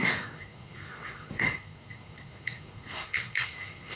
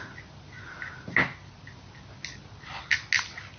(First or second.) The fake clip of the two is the first